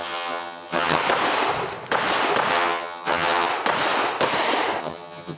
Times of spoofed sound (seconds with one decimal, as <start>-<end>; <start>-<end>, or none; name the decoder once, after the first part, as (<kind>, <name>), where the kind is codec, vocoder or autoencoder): 0.0-1.0 (vocoder, HiFi-GAN); 2.5-3.5; 4.8-5.4